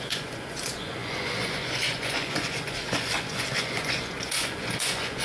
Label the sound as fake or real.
fake